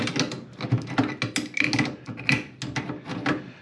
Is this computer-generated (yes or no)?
no